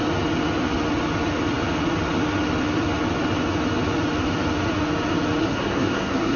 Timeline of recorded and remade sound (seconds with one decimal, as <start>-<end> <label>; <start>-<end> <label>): 0.0-5.4 recorded; 5.4-6.4 remade